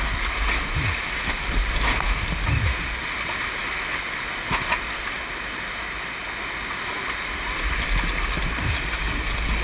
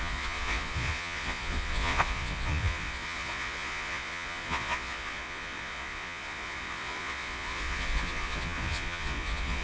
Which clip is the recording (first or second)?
first